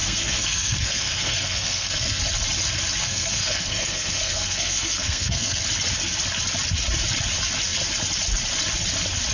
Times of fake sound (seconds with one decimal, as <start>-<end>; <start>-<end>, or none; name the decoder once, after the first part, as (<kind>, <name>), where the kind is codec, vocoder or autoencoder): 0.0-2.2 (codec, SNAC); 3.0-5.6

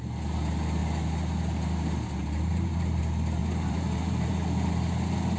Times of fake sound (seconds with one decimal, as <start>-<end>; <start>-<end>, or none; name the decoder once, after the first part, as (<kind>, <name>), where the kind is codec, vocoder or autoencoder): 2.5-3.0 (vocoder, BigVGAN v2); 3.4-4.3